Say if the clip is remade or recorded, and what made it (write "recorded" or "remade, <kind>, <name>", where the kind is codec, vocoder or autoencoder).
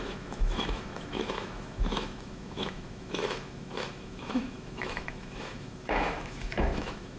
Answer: remade, autoencoder, DAC-VAE